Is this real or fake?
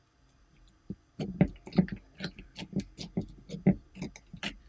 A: fake